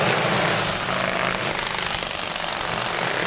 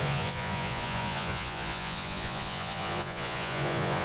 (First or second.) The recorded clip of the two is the first